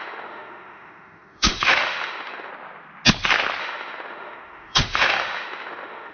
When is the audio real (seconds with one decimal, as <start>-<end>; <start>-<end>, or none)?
2.5-3.6